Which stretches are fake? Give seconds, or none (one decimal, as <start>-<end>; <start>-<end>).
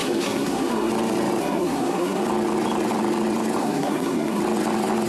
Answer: 0.0-0.9; 1.4-2.2; 3.6-4.4